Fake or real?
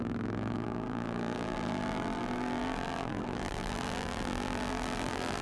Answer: fake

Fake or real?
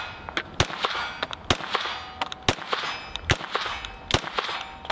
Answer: real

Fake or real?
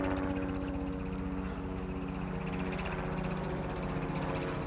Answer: real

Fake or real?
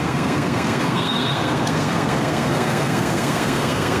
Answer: fake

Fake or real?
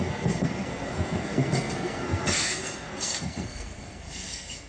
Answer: fake